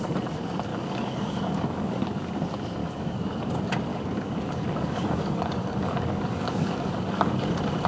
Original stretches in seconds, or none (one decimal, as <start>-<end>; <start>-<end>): 0.0-0.7; 2.3-2.8; 3.5-3.9; 7.5-7.9